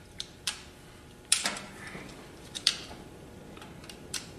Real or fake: fake